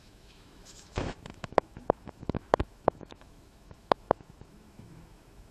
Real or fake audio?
fake